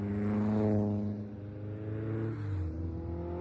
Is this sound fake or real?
real